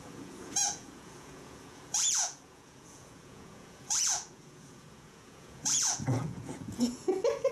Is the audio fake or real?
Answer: fake